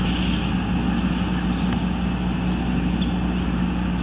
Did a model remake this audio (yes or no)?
no